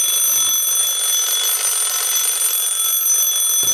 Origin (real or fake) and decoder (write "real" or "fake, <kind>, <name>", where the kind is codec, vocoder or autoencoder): real